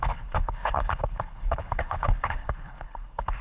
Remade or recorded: remade